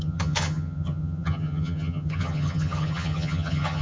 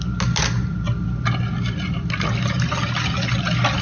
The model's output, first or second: first